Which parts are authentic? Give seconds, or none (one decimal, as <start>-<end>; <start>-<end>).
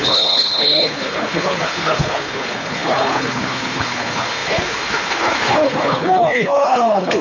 none